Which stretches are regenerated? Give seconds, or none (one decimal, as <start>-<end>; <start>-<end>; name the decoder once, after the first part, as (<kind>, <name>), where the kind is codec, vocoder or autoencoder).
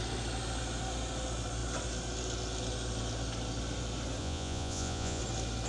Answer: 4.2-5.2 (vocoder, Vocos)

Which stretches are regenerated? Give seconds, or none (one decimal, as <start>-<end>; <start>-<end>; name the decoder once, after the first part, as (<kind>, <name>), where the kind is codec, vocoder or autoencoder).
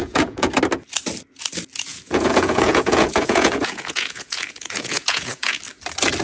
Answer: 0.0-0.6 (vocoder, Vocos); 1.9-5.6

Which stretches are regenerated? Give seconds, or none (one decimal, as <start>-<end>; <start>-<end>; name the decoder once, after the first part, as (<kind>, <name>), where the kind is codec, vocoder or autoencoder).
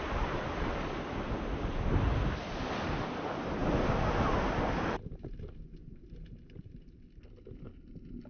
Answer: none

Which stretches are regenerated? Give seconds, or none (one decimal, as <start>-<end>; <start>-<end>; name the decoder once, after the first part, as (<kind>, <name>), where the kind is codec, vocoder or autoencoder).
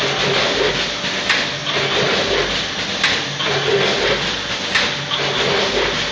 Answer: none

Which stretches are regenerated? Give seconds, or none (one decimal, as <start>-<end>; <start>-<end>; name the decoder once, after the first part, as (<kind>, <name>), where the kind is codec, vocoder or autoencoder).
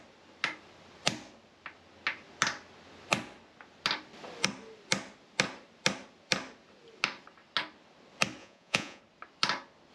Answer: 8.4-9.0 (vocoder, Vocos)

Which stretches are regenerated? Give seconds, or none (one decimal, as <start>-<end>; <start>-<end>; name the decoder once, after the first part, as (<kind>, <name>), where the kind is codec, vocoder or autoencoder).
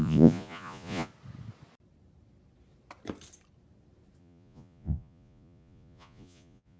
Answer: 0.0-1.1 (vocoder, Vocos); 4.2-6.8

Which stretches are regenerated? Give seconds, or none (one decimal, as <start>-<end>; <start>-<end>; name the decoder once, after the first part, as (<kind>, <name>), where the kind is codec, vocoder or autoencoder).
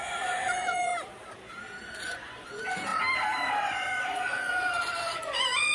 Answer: 0.0-0.9 (vocoder, Vocos); 2.0-2.9; 3.6-5.7